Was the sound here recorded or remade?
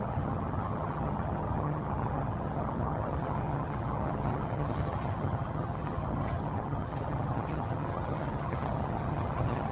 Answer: remade